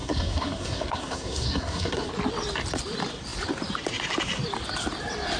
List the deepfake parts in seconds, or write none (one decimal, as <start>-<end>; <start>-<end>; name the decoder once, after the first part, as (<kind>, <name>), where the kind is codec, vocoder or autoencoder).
0.0-2.1 (codec, SNAC)